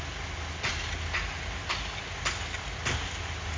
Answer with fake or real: real